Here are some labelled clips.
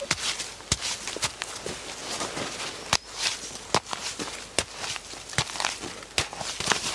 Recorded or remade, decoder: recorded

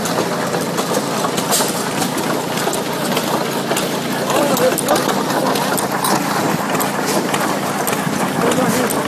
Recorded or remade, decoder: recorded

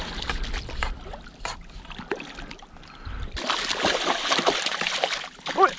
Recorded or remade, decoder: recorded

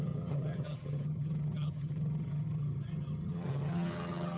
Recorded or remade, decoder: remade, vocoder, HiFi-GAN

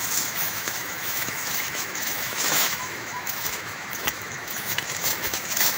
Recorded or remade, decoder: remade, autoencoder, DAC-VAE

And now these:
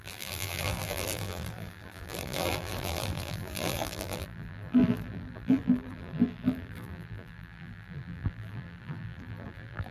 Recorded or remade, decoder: remade, vocoder, BigVGAN v2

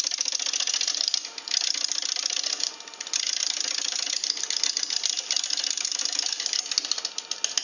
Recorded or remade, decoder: recorded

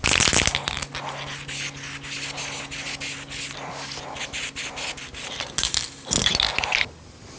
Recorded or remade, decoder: recorded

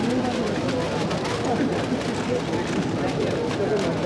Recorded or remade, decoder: recorded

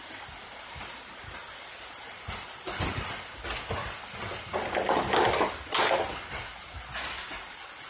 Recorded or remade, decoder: recorded